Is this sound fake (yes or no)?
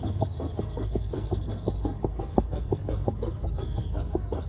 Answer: yes